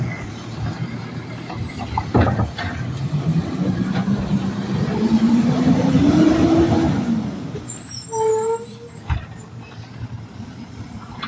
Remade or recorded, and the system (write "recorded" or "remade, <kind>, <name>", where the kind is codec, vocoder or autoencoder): remade, vocoder, BigVGAN v2